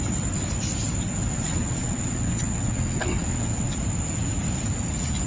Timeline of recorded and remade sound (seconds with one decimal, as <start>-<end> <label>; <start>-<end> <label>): 0.0-1.2 recorded; 1.2-3.7 remade; 3.7-5.3 recorded